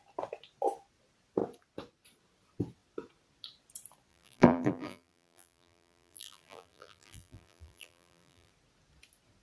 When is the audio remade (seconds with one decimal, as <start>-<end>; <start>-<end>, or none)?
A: 4.1-8.5